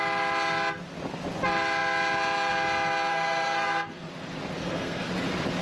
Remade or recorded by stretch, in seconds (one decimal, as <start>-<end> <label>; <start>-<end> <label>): 0.0-3.1 recorded; 3.1-4.1 remade; 4.1-4.6 recorded; 4.6-5.1 remade; 5.1-5.6 recorded

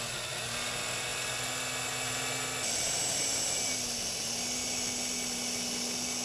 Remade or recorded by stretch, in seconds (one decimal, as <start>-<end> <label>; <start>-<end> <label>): 0.0-6.2 recorded

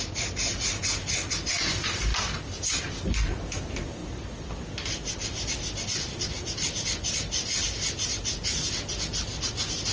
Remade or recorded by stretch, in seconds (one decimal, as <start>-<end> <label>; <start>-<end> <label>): 0.0-9.9 recorded

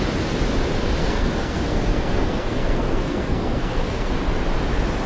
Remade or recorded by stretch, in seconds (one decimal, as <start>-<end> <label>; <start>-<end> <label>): 0.0-1.0 recorded; 1.0-4.1 remade; 4.1-5.1 recorded

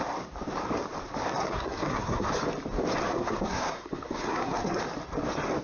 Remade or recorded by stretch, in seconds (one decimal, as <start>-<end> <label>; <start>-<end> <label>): 0.0-1.4 recorded; 1.4-2.3 remade; 2.3-3.1 recorded; 3.1-4.8 remade; 4.8-5.6 recorded

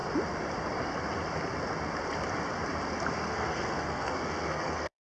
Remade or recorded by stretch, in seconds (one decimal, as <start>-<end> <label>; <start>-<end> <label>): 0.0-3.1 recorded; 3.1-5.1 remade

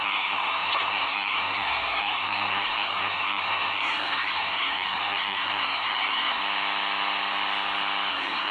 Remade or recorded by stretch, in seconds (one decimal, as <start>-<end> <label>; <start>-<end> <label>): 0.0-6.4 remade; 6.4-8.1 recorded; 8.1-8.5 remade